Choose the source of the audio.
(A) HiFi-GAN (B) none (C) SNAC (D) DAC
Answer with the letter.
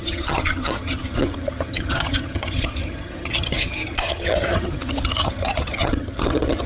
A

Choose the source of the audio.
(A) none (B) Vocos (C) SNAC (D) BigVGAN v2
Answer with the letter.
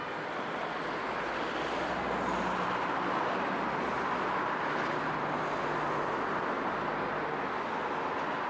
A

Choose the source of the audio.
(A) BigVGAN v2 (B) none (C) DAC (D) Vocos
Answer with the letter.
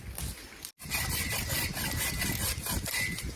B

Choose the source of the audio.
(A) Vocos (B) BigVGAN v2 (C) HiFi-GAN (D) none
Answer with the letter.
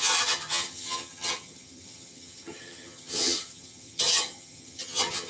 C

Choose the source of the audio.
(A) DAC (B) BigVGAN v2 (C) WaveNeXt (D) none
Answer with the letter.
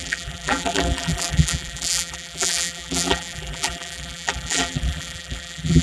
B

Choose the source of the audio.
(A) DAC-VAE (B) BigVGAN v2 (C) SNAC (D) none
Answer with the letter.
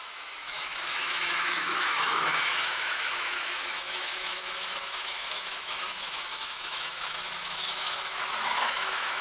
A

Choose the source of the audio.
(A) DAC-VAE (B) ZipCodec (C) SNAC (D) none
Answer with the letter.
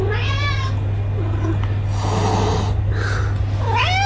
D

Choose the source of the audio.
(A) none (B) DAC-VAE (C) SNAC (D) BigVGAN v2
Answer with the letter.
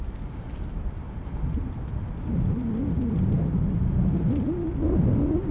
A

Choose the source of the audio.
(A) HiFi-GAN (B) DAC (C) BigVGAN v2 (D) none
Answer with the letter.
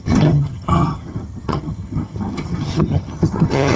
A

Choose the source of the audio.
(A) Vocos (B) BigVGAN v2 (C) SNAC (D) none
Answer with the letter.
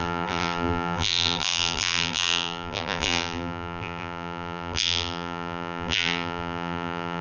B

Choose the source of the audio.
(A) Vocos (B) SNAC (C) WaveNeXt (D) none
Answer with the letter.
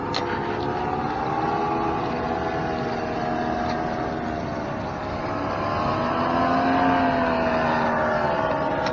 D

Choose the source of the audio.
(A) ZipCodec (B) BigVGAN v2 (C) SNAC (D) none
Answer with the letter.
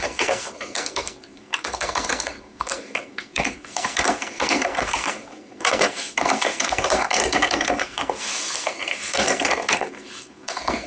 C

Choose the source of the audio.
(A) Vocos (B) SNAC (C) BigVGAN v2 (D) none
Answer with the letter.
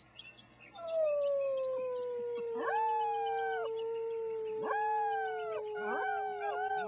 D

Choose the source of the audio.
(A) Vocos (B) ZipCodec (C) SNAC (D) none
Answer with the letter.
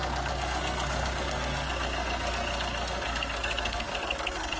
C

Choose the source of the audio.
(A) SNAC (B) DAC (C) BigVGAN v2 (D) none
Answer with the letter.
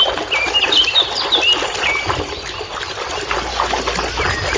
D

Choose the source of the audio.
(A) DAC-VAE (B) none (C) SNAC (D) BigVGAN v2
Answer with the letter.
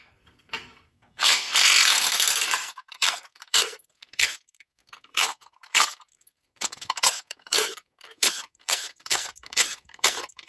C